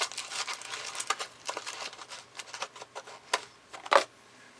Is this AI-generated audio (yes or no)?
no